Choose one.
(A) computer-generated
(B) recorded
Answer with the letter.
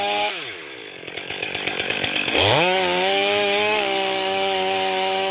A